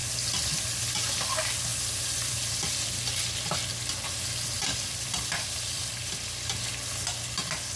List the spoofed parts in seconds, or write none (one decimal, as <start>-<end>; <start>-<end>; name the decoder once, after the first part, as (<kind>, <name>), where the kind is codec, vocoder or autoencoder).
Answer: 0.0-0.8 (vocoder, BigVGAN v2); 1.7-2.9; 4.6-5.9